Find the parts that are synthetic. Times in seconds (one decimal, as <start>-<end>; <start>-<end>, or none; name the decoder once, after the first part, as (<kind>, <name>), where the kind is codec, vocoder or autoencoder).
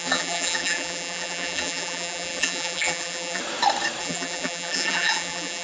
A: 0.0-3.4 (vocoder, BigVGAN v2); 4.0-5.6